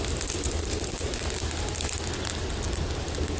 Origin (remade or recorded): recorded